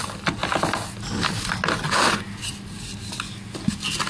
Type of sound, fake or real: real